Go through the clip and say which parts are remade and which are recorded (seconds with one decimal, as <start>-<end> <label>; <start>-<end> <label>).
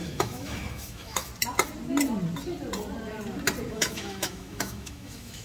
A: 0.0-1.3 remade; 1.3-3.7 recorded; 3.7-5.4 remade